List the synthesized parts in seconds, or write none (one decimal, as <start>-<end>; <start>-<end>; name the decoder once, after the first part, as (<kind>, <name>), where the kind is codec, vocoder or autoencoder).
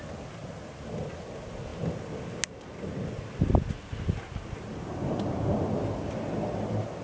none